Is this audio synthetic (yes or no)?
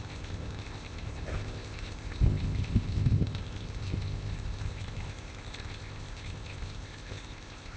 yes